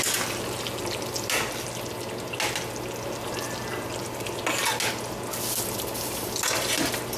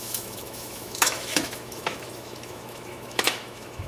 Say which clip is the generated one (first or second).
second